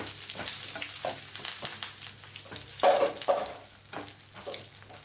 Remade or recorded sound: recorded